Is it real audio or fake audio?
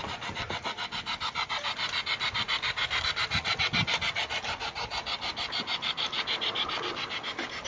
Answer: real